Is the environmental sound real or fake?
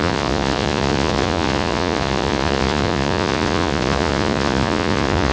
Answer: fake